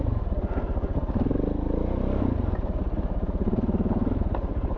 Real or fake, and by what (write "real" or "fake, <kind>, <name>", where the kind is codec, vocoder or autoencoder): real